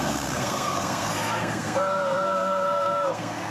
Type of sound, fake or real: fake